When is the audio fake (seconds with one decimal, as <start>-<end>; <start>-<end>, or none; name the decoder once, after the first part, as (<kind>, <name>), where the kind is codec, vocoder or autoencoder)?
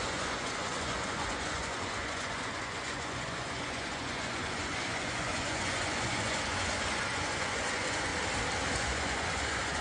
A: 0.0-8.1 (vocoder, Vocos); 8.7-9.8